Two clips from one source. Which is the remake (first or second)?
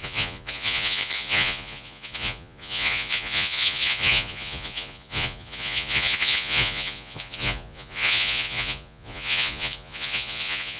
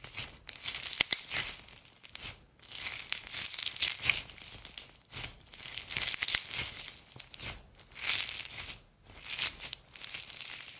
first